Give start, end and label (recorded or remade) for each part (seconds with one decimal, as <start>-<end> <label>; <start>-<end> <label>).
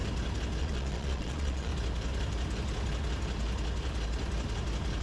0.0-0.6 recorded; 0.6-1.7 remade; 1.7-5.0 recorded